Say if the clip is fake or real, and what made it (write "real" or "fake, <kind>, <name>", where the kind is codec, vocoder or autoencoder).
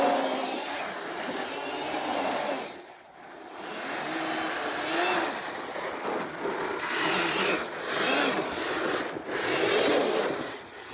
real